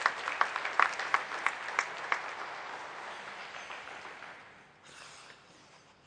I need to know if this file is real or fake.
real